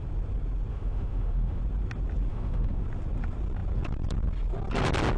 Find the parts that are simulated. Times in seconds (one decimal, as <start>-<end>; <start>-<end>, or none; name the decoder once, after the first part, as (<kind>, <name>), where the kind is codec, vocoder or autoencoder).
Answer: 0.7-1.6 (autoencoder, DAC-VAE); 2.3-2.8